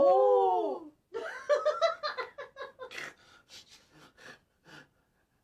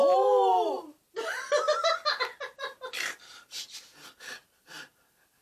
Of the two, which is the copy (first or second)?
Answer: second